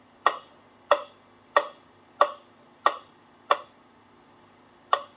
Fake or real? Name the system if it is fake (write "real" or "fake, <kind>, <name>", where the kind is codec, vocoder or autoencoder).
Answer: real